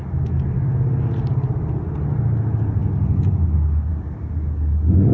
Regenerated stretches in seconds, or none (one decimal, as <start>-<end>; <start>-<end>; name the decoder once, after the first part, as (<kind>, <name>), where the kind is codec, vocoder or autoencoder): none